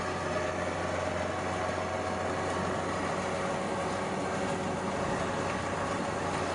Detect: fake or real real